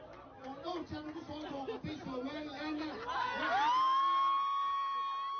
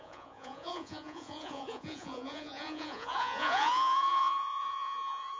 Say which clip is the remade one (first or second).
second